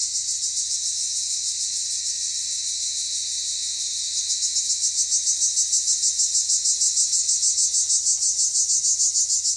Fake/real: real